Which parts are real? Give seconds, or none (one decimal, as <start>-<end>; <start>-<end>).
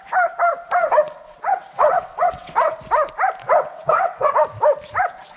0.0-0.8; 2.8-3.4; 4.3-5.4